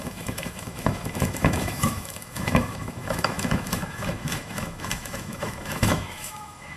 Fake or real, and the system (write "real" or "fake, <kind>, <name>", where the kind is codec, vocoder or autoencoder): fake, autoencoder, DAC-VAE